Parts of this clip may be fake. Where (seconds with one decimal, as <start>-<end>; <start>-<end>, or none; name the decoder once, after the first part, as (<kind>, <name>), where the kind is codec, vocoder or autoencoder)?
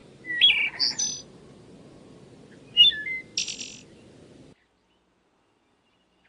none